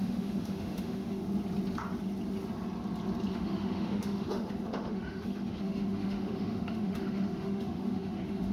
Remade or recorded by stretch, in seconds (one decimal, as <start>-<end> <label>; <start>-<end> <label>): 0.0-1.2 remade; 1.2-3.3 recorded; 3.3-8.5 remade